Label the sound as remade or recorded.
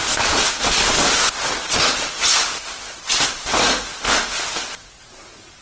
recorded